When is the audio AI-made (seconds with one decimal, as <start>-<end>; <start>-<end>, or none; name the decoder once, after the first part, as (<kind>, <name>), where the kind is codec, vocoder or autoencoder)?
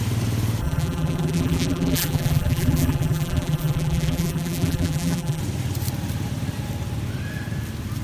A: 0.6-5.4 (vocoder, BigVGAN v2)